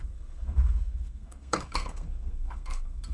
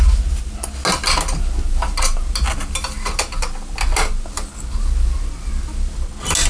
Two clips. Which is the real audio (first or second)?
second